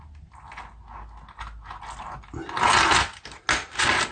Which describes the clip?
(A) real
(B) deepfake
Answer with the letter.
A